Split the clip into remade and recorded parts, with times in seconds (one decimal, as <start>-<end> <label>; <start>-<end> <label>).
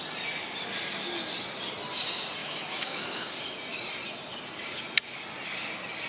0.0-2.4 recorded; 2.4-3.3 remade; 3.3-6.1 recorded